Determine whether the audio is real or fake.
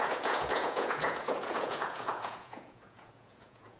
fake